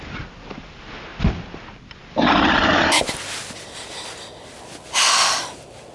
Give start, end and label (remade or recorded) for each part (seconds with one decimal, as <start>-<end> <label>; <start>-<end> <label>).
0.0-5.9 recorded